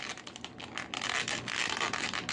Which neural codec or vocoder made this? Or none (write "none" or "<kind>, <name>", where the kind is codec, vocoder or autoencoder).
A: none